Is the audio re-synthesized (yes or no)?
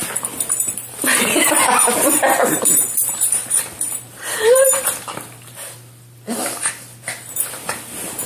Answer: yes